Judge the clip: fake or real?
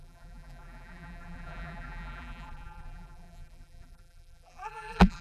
fake